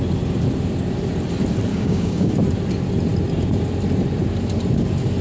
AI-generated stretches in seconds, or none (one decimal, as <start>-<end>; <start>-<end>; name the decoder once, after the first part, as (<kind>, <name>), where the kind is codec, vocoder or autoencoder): 1.7-2.3 (codec, DAC)